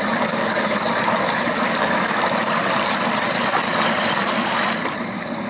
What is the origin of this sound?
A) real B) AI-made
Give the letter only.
A